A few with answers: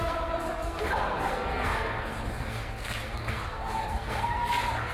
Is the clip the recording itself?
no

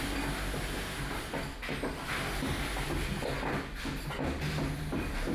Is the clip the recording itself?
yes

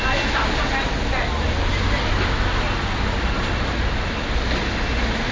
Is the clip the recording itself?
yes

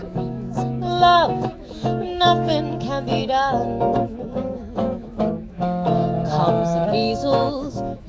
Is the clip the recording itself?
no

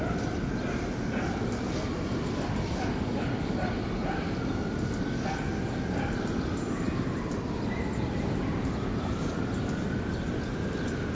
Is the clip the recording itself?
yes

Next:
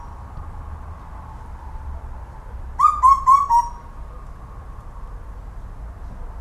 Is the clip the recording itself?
yes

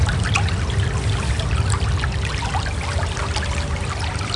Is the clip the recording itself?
yes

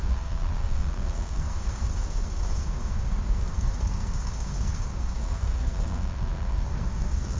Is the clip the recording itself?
no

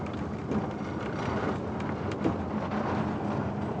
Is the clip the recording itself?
yes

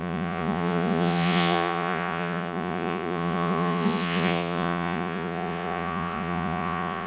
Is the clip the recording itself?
no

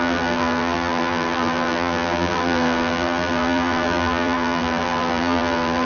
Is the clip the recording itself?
no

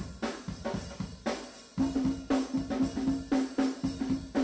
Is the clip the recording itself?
yes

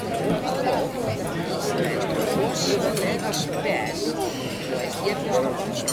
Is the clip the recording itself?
yes